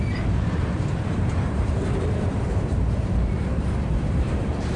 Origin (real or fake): fake